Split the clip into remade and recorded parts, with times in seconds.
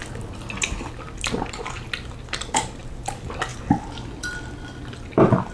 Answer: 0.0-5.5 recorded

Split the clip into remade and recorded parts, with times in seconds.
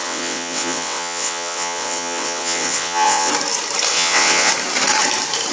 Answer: 0.0-3.3 remade; 3.3-3.9 recorded; 3.9-4.5 remade; 4.5-5.5 recorded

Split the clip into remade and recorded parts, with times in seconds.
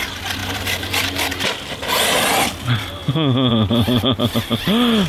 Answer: 0.0-0.4 recorded; 0.4-2.3 remade; 2.3-5.1 recorded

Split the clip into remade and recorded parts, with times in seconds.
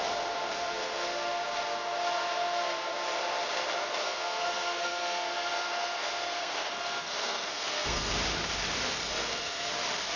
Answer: 0.0-4.0 recorded; 4.0-8.1 remade; 8.1-9.1 recorded; 9.1-9.7 remade; 9.7-10.2 recorded